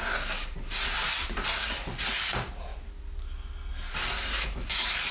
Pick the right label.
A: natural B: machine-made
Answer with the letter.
A